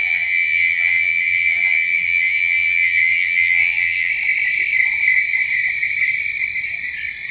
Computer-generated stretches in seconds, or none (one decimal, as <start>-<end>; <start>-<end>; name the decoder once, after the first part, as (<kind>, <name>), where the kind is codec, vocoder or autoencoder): 0.0-4.1 (vocoder, BigVGAN v2)